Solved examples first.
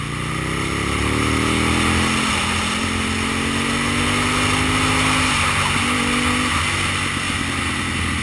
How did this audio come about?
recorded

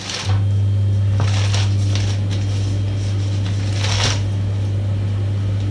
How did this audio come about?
recorded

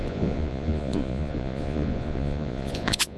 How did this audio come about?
remade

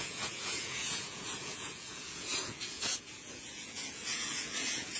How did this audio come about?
remade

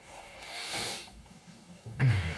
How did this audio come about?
remade